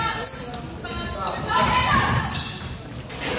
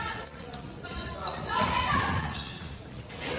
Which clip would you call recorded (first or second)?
first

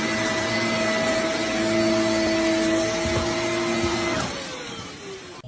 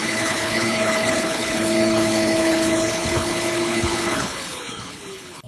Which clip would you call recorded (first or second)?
first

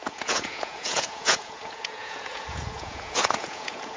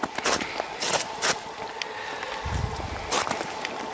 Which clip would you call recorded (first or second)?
second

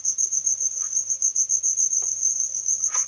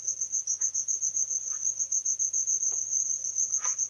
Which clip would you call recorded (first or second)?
second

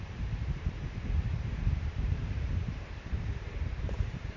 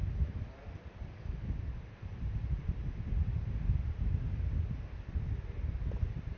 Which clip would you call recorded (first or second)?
second